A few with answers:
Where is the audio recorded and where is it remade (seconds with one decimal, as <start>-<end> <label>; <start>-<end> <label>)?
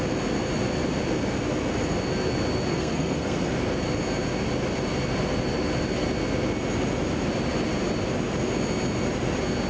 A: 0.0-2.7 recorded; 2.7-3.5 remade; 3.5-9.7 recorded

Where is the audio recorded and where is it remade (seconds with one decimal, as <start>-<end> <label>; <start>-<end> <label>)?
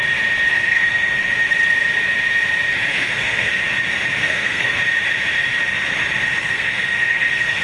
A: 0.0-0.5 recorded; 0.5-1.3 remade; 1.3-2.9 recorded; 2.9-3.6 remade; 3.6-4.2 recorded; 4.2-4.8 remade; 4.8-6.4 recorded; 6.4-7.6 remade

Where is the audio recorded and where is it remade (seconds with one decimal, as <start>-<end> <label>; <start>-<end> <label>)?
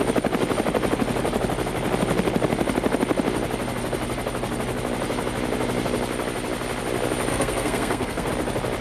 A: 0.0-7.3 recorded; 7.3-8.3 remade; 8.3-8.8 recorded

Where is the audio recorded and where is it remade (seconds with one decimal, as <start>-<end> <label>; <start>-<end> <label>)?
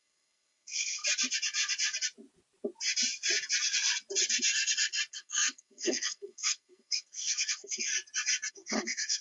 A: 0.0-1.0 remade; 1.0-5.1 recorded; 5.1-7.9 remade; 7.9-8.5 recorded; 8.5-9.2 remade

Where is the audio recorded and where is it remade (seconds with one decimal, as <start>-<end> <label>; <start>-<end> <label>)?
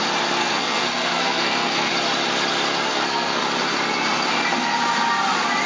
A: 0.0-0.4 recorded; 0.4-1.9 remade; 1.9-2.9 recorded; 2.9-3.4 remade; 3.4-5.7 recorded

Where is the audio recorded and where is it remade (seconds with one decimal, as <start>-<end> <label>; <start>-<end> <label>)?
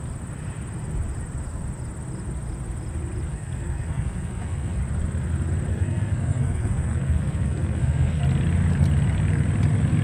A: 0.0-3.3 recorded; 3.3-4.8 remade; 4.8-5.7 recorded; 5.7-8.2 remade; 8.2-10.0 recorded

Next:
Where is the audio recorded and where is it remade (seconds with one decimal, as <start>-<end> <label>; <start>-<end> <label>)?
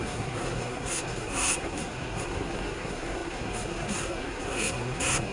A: 0.0-5.3 remade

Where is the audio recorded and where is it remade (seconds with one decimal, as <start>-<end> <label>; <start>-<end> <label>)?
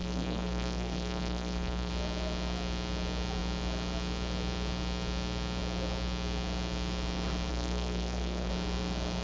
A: 0.0-1.9 remade; 1.9-7.5 recorded; 7.5-8.5 remade; 8.5-9.2 recorded